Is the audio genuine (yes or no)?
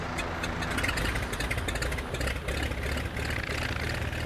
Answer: yes